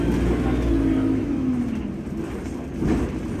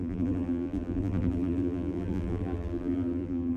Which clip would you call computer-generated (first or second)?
second